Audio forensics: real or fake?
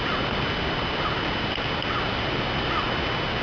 real